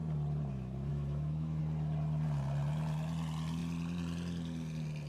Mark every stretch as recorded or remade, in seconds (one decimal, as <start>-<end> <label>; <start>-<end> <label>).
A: 0.0-0.9 recorded; 0.9-1.6 remade; 1.6-5.1 recorded